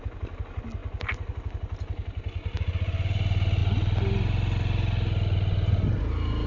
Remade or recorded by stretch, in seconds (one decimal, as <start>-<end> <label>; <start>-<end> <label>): 0.0-6.5 recorded